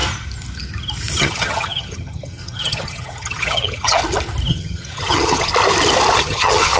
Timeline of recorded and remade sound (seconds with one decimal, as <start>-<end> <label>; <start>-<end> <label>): 0.0-1.2 recorded; 1.2-4.0 remade; 4.0-4.5 recorded; 4.5-5.5 remade; 5.5-6.2 recorded; 6.2-6.8 remade